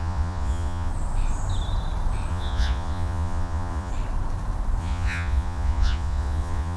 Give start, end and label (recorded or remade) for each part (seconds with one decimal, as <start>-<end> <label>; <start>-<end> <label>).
0.0-0.9 remade; 0.9-2.3 recorded; 2.3-3.9 remade; 3.9-4.8 recorded; 4.8-6.8 remade